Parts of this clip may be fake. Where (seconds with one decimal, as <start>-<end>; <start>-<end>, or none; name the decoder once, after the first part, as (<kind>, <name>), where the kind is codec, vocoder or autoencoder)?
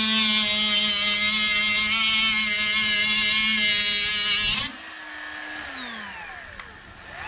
none